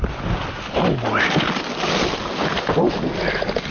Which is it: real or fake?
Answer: real